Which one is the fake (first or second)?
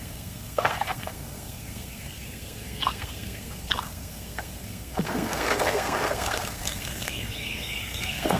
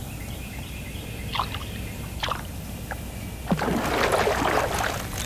first